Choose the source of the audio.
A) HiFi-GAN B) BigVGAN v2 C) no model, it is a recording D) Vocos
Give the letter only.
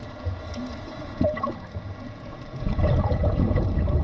D